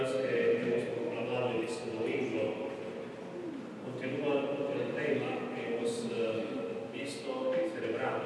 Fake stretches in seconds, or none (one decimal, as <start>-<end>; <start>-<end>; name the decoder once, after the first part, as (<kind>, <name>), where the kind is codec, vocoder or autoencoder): 6.4-7.1 (vocoder, BigVGAN v2)